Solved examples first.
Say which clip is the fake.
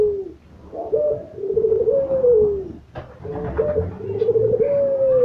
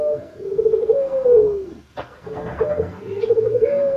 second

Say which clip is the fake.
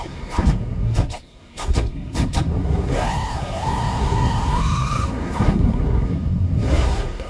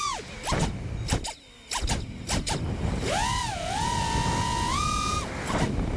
first